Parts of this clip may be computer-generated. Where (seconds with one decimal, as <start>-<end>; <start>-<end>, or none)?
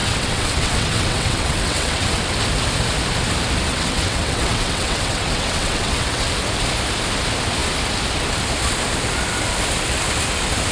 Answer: 0.0-2.2; 3.7-6.3